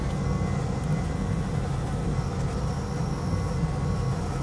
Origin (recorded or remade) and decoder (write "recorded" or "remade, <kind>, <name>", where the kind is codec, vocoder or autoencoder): recorded